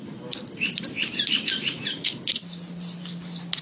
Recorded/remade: recorded